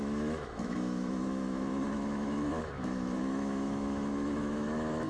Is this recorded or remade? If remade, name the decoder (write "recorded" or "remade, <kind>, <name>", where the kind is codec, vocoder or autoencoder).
remade, autoencoder, DAC-VAE